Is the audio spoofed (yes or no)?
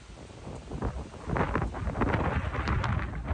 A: no